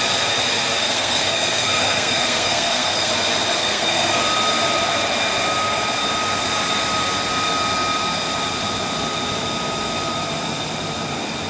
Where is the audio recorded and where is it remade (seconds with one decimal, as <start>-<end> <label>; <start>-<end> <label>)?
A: 0.0-0.8 recorded; 0.8-3.1 remade; 3.1-3.6 recorded; 3.6-4.2 remade; 4.2-11.5 recorded